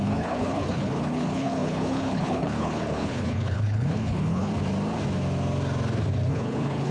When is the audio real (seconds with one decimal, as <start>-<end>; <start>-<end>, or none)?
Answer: 4.5-6.3